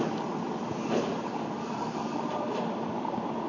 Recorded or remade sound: remade